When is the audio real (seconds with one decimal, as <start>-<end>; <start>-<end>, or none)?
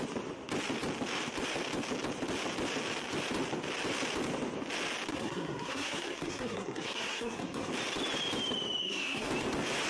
0.0-5.1; 7.7-8.8; 9.3-9.9